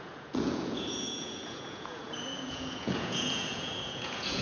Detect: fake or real fake